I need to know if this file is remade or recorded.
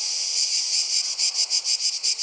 remade